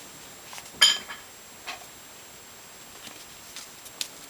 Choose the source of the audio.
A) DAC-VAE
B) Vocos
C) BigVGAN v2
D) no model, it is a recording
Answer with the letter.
D